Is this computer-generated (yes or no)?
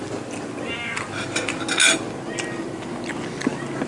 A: no